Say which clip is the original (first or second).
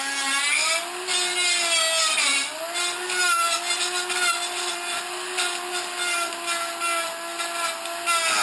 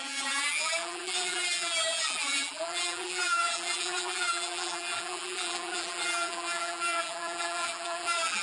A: first